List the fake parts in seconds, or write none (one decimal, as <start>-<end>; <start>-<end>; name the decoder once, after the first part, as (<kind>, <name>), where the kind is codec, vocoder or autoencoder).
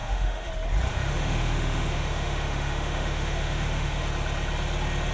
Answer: 0.0-0.5 (autoencoder, DAC-VAE); 0.9-4.0